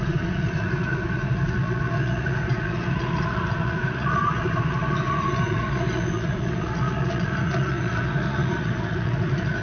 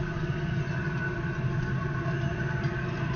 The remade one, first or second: first